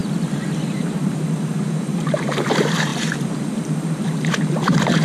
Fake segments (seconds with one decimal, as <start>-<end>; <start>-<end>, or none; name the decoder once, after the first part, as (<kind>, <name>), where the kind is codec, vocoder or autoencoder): 0.7-5.0 (vocoder, BigVGAN v2)